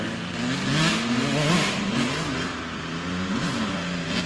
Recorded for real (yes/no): yes